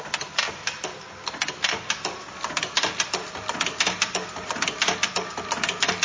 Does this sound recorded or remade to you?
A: recorded